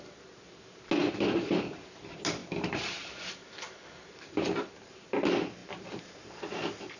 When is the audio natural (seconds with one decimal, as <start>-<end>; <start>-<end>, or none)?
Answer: 0.0-1.0; 2.0-2.4; 5.1-5.6; 6.1-7.0